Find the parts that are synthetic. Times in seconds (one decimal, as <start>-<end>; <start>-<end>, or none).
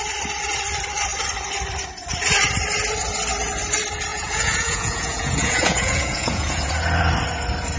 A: 4.1-6.7